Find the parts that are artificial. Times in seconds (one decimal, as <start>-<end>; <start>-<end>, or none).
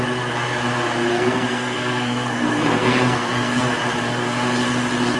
1.1-3.6